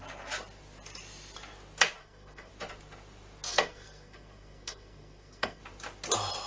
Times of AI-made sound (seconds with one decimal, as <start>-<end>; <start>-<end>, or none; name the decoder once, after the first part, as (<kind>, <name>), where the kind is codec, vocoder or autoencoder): 2.0-2.5 (codec, SNAC); 3.5-5.6